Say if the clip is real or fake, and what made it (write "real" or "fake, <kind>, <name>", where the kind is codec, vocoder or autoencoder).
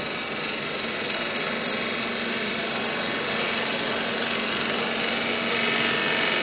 real